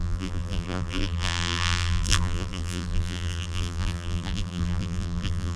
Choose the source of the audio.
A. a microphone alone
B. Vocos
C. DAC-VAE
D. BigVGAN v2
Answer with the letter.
D